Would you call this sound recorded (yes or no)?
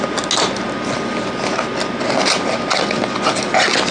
yes